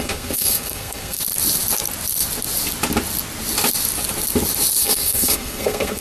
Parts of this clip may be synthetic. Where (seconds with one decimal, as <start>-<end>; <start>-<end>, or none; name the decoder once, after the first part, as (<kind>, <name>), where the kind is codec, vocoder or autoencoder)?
0.0-1.2 (codec, SNAC); 4.8-6.0